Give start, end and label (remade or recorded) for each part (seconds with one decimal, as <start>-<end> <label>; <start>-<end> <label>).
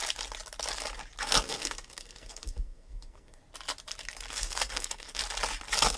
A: 0.0-1.2 recorded; 1.2-3.4 remade; 3.4-4.3 recorded; 4.3-5.2 remade; 5.2-6.0 recorded